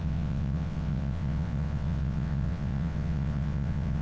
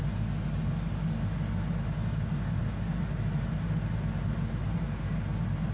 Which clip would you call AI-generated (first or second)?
first